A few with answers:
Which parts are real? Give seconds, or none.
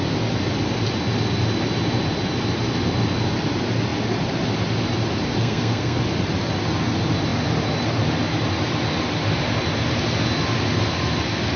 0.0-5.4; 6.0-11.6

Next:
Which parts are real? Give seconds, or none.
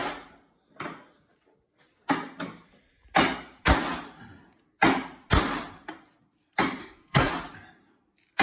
0.0-6.8; 7.3-8.4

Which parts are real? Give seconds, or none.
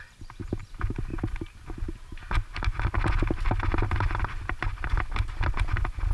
0.0-6.1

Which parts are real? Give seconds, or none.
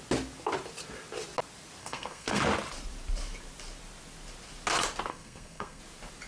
0.0-1.8; 2.4-5.1; 5.8-6.3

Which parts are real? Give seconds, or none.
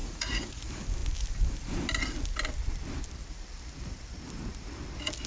0.6-5.3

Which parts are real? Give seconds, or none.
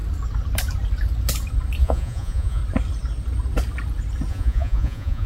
0.0-1.8; 2.6-4.3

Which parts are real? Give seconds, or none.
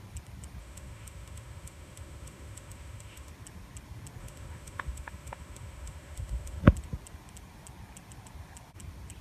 0.0-0.6; 3.3-4.2; 6.6-9.2